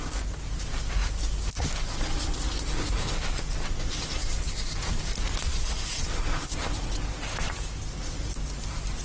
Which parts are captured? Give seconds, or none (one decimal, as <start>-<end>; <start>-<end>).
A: 0.0-9.0